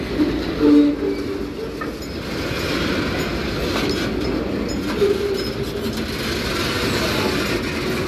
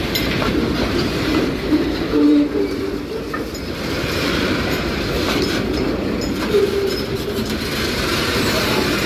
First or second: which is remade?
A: second